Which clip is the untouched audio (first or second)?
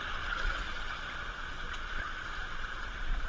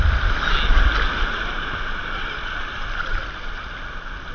second